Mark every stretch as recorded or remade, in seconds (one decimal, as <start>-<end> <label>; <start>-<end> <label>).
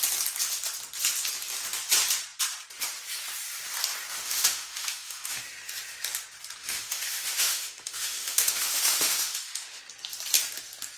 0.0-4.1 recorded; 4.1-5.4 remade; 5.4-6.6 recorded; 6.6-9.8 remade; 9.8-11.0 recorded